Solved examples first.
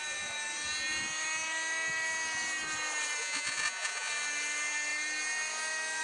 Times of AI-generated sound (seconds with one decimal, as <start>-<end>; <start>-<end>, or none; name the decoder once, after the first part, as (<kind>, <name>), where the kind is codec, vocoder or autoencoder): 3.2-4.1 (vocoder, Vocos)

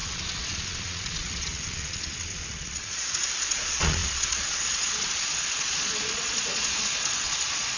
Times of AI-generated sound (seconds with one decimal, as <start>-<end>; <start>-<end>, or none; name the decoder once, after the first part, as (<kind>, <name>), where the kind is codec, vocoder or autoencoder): 0.0-7.8 (vocoder, Vocos)

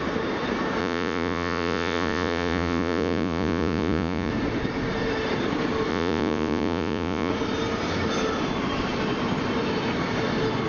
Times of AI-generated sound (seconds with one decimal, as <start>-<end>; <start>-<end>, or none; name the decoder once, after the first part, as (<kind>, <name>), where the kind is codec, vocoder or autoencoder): 0.8-4.3 (vocoder, Vocos); 5.9-7.3